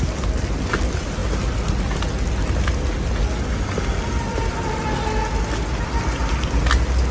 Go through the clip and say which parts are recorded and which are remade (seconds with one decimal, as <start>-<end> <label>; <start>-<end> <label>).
0.0-7.1 recorded